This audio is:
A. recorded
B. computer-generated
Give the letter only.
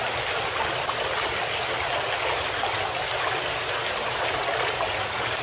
A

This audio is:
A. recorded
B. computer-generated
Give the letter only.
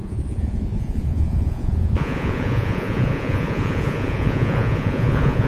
B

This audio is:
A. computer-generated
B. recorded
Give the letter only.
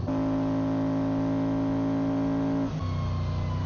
B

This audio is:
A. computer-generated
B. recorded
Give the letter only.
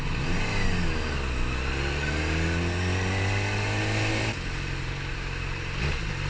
B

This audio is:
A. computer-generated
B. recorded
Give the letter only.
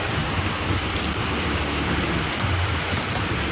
B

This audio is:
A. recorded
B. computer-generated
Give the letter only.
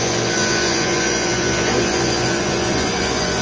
B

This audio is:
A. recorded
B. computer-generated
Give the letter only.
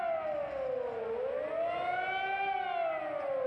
A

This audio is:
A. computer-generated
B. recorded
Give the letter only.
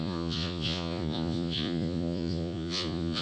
A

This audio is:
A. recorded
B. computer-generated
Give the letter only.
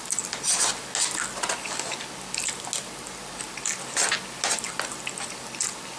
A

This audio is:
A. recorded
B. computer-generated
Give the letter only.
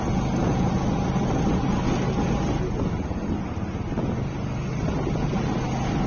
A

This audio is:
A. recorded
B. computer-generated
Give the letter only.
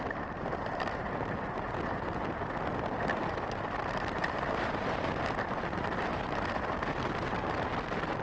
A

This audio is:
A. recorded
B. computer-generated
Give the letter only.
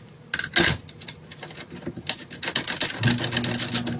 A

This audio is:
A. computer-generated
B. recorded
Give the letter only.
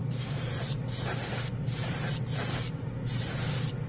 B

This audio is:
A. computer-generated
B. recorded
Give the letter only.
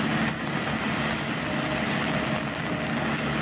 B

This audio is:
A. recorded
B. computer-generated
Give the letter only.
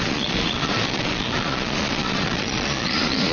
B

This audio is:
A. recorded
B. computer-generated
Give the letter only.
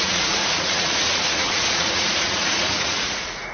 B